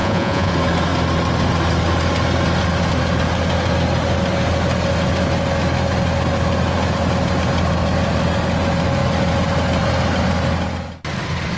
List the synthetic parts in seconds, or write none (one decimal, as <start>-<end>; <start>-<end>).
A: 0.0-0.5